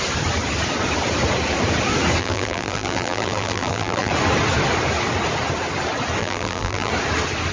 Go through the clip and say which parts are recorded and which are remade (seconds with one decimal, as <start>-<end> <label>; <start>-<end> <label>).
0.0-2.2 recorded; 2.2-4.1 remade; 4.1-6.2 recorded; 6.2-6.9 remade; 6.9-7.5 recorded